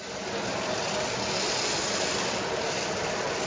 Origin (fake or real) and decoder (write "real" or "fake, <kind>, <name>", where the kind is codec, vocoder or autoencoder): real